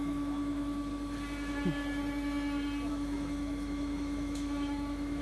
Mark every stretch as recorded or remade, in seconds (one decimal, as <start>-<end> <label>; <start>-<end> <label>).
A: 0.0-0.9 remade; 0.9-2.9 recorded; 2.9-5.2 remade